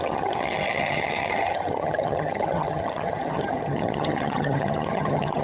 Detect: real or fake fake